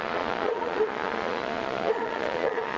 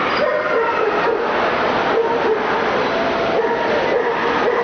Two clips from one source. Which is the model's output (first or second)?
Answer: first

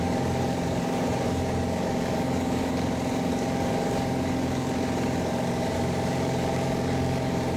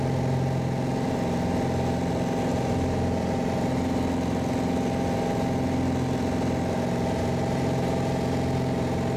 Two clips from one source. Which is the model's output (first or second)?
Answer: first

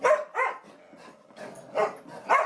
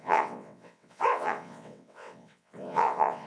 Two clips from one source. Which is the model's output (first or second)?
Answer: second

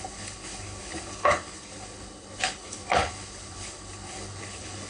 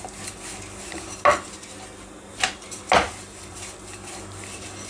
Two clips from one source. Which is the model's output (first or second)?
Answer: first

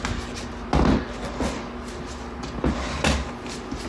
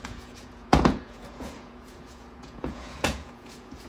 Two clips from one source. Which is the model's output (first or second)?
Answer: second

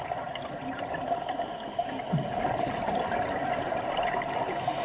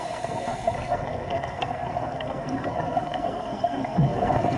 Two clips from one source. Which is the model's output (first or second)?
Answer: second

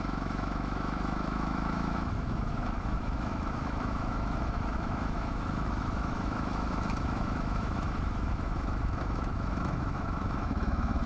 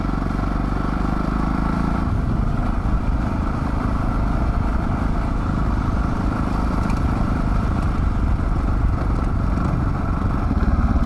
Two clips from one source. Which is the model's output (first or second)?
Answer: first